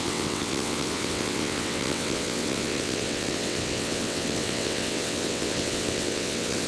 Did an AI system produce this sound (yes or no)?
yes